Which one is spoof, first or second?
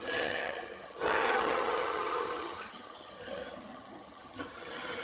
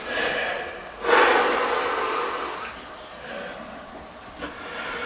first